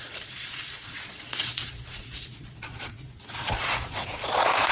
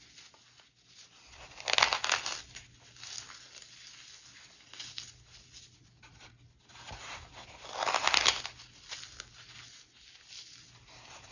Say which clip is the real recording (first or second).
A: second